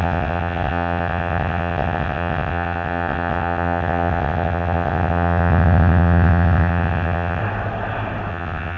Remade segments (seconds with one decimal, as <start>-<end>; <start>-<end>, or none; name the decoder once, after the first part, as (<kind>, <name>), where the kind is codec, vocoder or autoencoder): 0.0-7.4 (vocoder, WaveNeXt); 8.3-8.8